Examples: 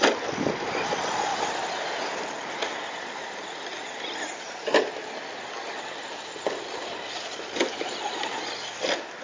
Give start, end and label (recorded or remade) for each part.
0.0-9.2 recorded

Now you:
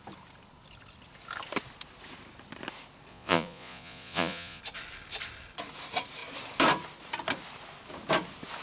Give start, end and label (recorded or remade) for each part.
0.0-3.1 recorded; 3.1-4.6 remade; 4.6-8.6 recorded

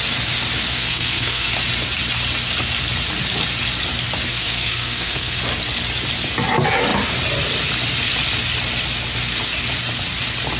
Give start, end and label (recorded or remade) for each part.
0.0-0.7 recorded; 0.7-1.5 remade; 1.5-4.3 recorded; 4.3-5.4 remade; 5.4-10.6 recorded

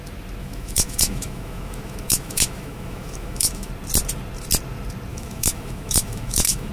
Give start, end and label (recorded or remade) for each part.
0.0-0.4 recorded; 0.4-3.7 remade; 3.7-5.1 recorded; 5.1-6.7 remade